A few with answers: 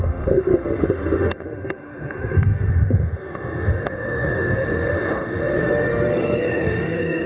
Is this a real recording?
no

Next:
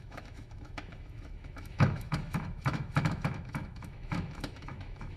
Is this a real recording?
no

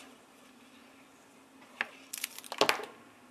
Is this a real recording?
yes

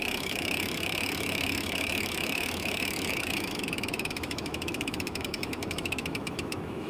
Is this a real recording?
no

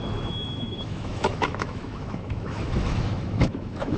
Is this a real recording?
no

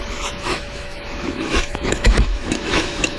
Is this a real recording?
no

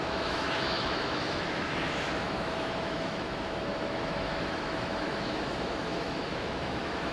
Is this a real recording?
no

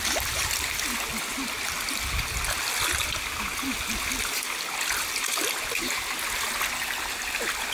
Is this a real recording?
yes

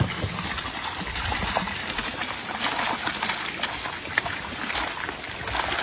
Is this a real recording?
yes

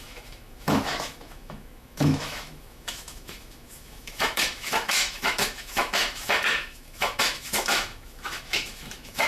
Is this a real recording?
no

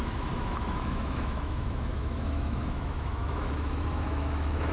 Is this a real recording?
no